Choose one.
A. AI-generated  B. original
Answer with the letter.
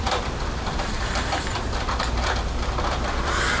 A